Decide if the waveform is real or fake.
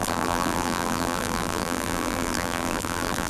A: fake